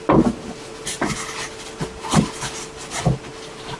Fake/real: real